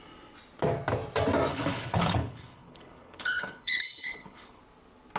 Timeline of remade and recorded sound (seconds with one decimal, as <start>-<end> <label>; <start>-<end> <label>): 0.0-1.5 recorded; 1.5-4.6 remade; 4.6-5.2 recorded